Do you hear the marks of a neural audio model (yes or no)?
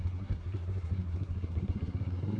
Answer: yes